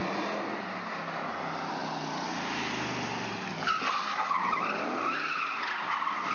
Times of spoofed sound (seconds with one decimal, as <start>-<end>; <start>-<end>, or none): none